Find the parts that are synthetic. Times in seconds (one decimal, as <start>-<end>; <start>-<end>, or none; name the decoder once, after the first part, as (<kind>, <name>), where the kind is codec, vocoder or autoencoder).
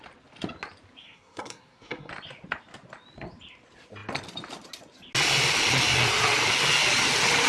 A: 1.0-2.1 (codec, SNAC)